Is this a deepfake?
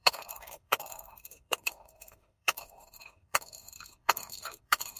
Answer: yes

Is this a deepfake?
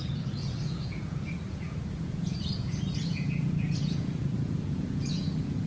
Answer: yes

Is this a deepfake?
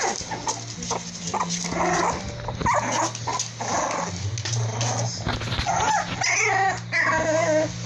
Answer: no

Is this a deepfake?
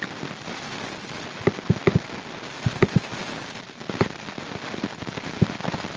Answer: no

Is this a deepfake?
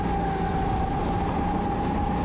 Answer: no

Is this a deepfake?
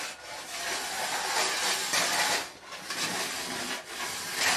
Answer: no